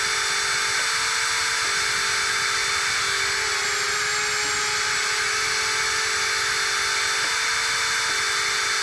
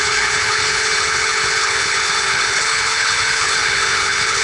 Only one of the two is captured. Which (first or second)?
first